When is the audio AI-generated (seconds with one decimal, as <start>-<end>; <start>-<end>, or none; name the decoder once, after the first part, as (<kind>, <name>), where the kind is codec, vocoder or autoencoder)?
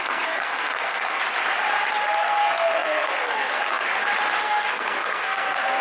0.0-1.2 (codec, SNAC); 2.2-3.9; 4.4-5.8